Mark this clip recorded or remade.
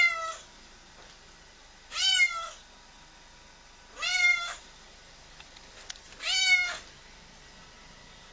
recorded